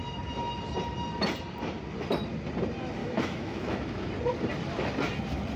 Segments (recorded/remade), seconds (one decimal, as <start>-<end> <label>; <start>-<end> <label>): 0.0-3.0 recorded; 3.0-4.1 remade; 4.1-5.6 recorded